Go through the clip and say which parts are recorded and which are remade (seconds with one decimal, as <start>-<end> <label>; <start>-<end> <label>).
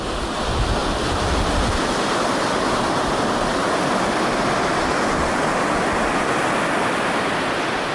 0.0-7.9 recorded